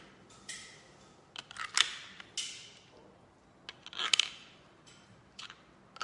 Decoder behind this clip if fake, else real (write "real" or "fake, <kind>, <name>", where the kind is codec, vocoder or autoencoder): real